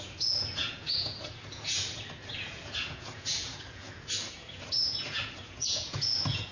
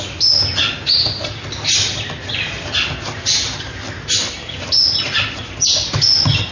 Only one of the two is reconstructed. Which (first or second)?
first